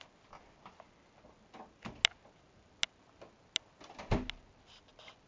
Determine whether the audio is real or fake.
real